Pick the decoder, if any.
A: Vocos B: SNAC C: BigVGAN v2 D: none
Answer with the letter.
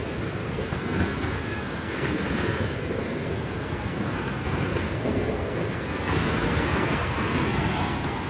B